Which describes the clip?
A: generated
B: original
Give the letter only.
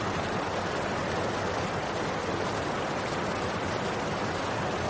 B